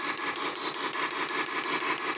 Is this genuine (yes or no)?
yes